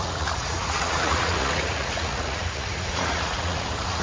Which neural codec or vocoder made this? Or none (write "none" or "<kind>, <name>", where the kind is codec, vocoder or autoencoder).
vocoder, Vocos